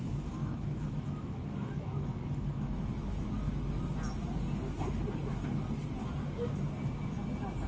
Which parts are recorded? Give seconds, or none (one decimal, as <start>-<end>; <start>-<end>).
0.0-0.4; 3.5-7.7